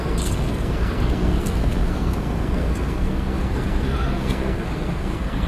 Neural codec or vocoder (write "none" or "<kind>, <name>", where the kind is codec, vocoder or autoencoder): codec, SNAC